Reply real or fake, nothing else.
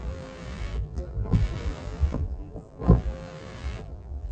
fake